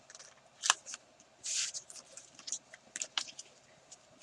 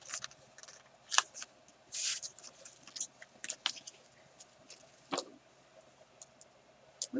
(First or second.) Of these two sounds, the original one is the second